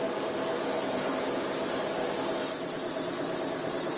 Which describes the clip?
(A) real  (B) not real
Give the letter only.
A